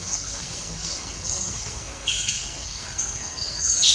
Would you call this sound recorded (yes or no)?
no